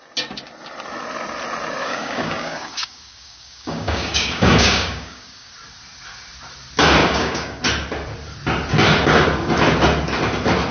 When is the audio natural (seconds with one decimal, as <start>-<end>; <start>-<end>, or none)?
0.0-1.8; 5.5-7.0; 7.6-10.7